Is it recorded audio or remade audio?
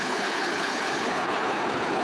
remade